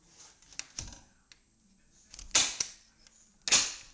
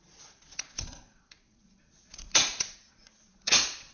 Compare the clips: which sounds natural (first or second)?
first